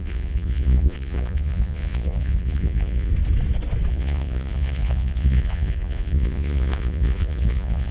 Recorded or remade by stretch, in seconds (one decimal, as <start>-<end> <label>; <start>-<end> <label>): 0.0-3.1 remade; 3.1-3.9 recorded; 3.9-7.9 remade